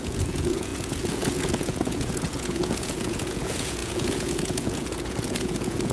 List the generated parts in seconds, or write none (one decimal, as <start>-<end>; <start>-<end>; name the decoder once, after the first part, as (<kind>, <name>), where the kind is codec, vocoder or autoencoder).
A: 0.0-5.9 (vocoder, Vocos)